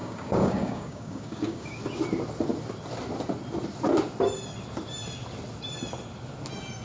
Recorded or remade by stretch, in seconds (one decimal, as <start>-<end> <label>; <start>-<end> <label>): 0.0-1.8 remade; 1.8-6.8 recorded